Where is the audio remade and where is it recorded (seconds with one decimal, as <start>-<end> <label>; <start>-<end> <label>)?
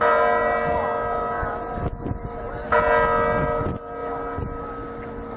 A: 0.0-5.4 recorded